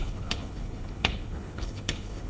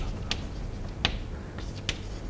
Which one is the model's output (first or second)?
first